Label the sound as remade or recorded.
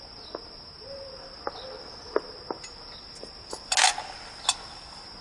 recorded